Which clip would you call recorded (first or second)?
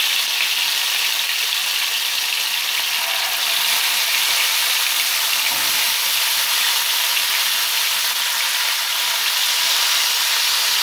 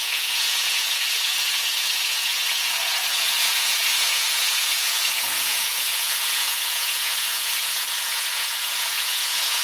first